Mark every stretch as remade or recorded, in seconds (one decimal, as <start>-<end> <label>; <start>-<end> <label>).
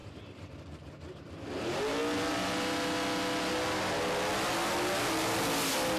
0.0-1.5 remade; 1.5-6.0 recorded